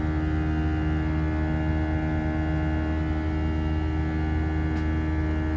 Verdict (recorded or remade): recorded